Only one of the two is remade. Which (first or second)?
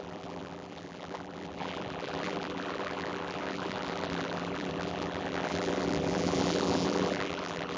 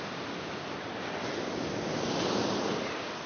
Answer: first